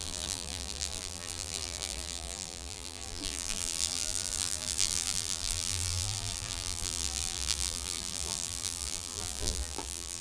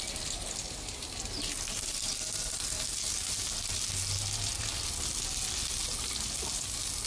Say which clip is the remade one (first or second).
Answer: first